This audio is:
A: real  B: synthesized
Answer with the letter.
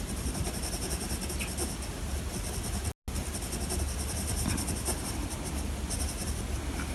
A